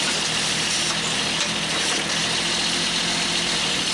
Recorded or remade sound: recorded